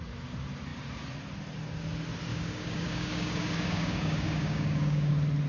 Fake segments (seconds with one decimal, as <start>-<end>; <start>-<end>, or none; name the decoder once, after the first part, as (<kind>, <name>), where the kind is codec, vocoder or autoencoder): 2.3-5.1 (codec, DAC)